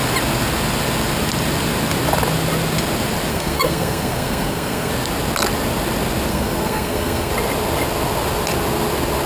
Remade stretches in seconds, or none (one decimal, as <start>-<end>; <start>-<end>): 3.3-4.9; 6.3-7.3